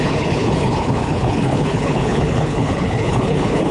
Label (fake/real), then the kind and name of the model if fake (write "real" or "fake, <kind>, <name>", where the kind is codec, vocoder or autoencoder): fake, codec, HILCodec